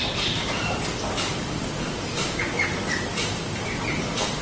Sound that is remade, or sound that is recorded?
remade